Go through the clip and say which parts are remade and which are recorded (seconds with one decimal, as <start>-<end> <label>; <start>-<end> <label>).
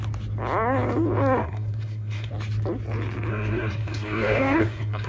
0.0-1.4 recorded; 1.4-2.3 remade; 2.3-3.3 recorded; 3.3-5.1 remade